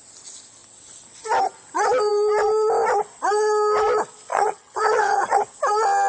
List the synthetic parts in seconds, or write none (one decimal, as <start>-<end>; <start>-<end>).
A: 4.3-5.4